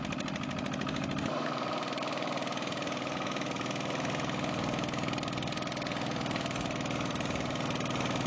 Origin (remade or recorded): recorded